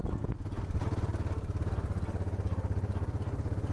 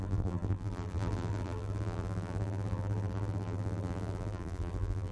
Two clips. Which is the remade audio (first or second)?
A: second